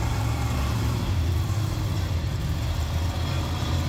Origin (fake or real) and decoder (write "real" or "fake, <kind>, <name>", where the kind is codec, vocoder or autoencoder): fake, vocoder, BigVGAN v2